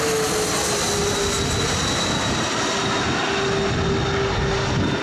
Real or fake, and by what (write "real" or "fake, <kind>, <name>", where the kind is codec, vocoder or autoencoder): real